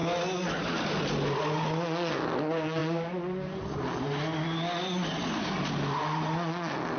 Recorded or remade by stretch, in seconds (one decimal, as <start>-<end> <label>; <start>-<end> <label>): 0.0-7.0 recorded